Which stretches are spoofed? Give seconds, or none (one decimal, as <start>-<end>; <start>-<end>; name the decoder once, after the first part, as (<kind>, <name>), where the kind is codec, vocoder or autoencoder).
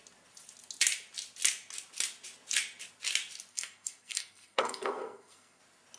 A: 3.5-5.6 (codec, SNAC)